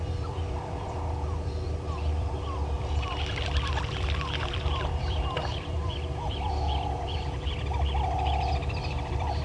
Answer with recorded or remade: remade